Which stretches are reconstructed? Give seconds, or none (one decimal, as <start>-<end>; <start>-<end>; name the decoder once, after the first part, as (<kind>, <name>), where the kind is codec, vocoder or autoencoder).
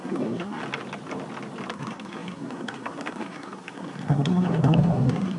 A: 0.0-0.6 (codec, SNAC); 1.7-5.4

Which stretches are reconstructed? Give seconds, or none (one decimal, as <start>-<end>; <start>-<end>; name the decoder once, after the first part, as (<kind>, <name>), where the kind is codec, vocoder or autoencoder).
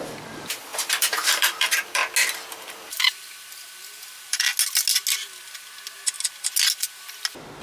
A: 0.0-2.0 (vocoder, BigVGAN v2); 2.5-4.5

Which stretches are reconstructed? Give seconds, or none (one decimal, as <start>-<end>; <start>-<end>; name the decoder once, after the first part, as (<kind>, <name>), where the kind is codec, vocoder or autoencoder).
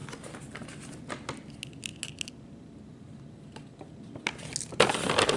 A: none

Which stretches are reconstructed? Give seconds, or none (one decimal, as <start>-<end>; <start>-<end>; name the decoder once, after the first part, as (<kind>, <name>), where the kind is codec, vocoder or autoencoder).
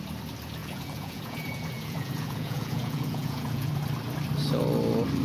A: 0.6-3.7 (vocoder, Vocos)